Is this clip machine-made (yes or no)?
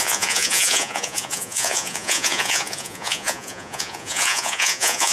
yes